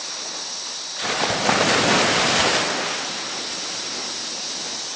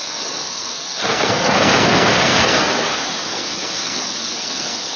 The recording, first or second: first